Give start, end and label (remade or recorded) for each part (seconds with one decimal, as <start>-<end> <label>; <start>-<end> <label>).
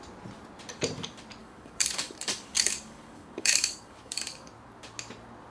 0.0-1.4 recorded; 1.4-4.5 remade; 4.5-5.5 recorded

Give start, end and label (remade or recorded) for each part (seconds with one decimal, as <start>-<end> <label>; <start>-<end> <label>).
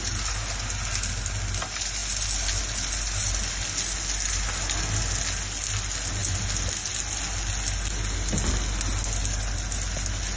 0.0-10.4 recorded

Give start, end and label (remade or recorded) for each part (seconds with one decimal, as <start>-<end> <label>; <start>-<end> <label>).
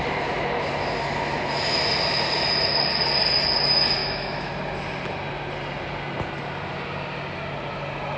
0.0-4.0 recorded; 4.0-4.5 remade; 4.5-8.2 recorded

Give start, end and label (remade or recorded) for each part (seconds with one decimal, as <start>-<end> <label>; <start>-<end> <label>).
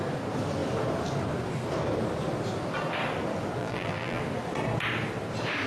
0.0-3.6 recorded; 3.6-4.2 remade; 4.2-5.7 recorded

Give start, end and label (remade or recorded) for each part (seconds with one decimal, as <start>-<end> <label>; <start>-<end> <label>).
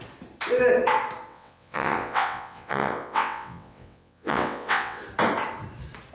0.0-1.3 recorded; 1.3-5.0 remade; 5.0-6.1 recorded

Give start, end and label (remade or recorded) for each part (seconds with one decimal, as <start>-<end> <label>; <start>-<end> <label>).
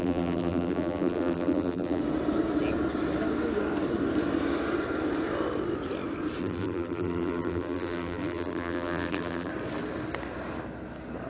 0.0-2.0 remade; 2.0-6.4 recorded; 6.4-9.5 remade; 9.5-11.3 recorded